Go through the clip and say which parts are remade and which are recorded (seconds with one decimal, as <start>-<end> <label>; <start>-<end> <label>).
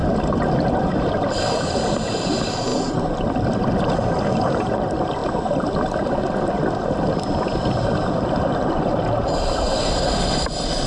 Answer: 0.0-0.8 recorded; 0.8-2.7 remade; 2.7-4.4 recorded; 4.4-5.2 remade; 5.2-7.4 recorded; 7.4-10.9 remade